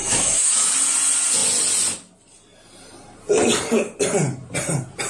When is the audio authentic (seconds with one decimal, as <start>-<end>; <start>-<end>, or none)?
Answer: 0.7-5.1

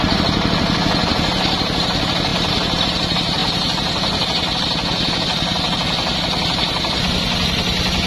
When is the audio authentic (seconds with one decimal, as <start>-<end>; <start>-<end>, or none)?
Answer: 0.0-8.1